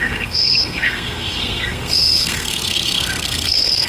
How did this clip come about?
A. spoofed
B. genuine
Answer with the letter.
A